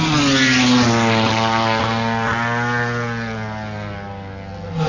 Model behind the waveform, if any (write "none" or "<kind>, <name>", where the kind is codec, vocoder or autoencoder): none